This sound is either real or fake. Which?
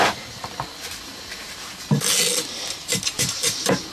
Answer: real